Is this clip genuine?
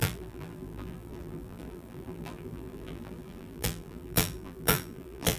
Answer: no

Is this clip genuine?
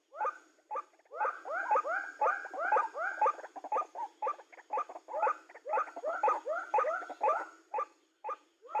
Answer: yes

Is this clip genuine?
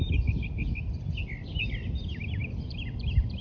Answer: yes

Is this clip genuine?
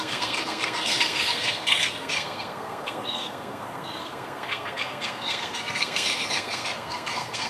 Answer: no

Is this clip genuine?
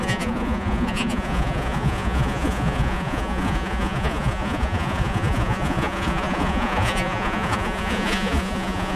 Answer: no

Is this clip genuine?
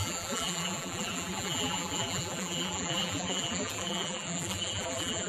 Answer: no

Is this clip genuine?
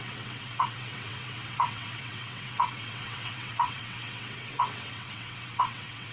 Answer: no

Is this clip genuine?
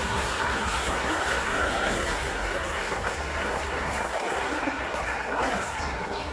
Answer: no